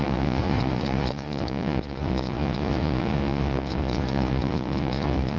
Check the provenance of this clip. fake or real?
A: fake